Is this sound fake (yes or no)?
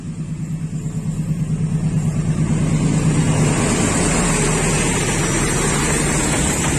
no